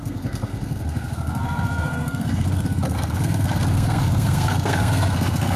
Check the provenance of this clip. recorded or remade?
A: remade